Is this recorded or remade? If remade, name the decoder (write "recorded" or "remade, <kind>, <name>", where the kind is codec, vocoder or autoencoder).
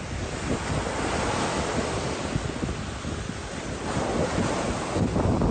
recorded